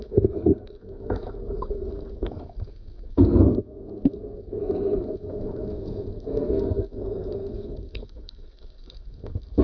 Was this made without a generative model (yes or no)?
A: no